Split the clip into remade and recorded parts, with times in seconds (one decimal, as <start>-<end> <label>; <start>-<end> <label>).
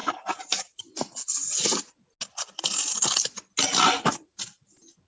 0.0-5.1 recorded